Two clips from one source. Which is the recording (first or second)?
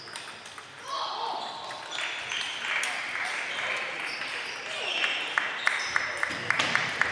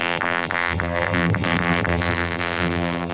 first